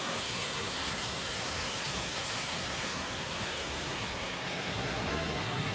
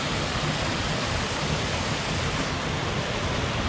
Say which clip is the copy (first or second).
first